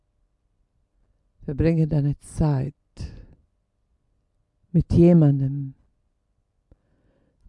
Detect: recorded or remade recorded